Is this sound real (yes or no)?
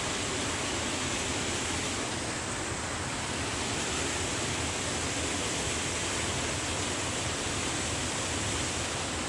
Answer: yes